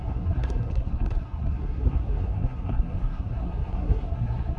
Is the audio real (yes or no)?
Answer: no